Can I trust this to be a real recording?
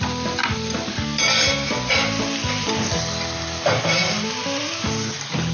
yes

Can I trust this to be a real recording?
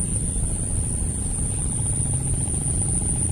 yes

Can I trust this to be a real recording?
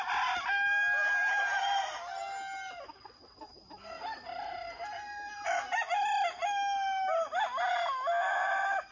yes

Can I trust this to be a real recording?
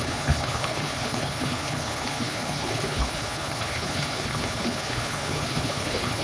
no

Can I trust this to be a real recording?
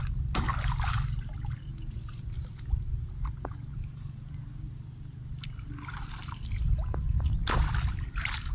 yes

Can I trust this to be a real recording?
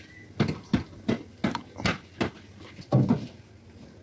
yes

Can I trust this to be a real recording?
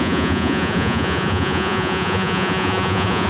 no